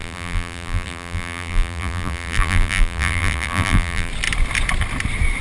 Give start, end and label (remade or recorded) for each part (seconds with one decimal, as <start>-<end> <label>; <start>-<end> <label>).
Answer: 0.0-4.1 remade; 4.1-5.4 recorded